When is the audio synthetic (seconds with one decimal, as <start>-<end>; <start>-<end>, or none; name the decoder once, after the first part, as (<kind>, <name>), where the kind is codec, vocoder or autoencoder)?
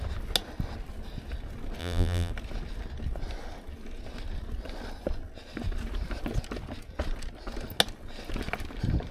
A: 1.8-2.3 (vocoder, BigVGAN v2)